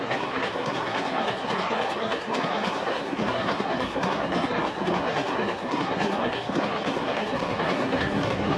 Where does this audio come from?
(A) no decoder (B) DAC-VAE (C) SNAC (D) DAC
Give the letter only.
C